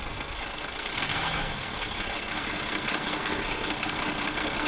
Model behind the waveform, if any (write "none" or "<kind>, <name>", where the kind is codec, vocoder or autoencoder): codec, SNAC